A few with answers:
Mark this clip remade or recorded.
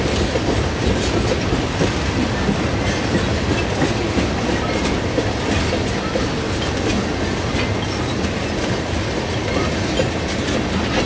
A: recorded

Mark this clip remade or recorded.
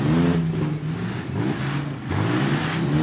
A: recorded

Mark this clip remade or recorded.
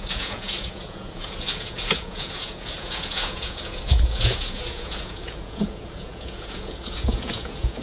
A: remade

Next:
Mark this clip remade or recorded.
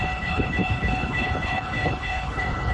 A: remade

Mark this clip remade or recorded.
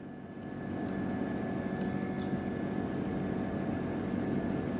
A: recorded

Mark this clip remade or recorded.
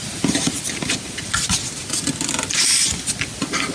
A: recorded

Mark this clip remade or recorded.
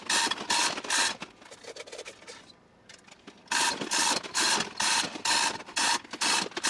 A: recorded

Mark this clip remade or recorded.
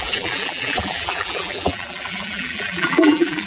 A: remade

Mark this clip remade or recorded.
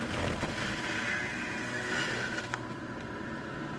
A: recorded